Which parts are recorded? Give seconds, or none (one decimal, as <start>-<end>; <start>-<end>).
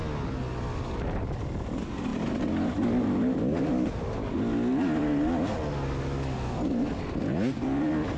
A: 0.0-8.2